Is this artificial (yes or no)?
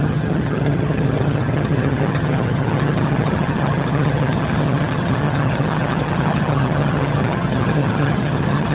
yes